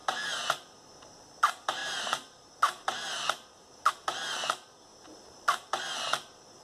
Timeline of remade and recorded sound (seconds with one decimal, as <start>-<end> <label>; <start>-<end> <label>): 0.0-1.1 remade; 1.1-1.8 recorded; 1.8-3.9 remade; 3.9-4.9 recorded; 4.9-5.8 remade; 5.8-6.6 recorded